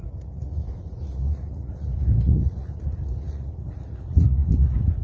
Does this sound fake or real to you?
fake